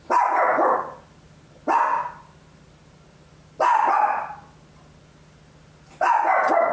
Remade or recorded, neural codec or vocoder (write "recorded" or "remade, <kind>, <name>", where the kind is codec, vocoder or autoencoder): recorded